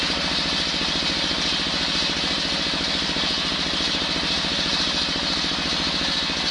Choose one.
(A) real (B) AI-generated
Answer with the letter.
A